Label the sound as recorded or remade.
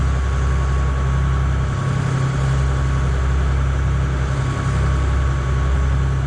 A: recorded